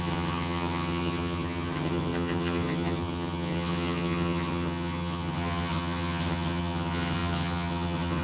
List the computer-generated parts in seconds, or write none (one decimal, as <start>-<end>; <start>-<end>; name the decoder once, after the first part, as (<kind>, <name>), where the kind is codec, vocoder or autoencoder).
0.0-8.2 (vocoder, HiFi-GAN)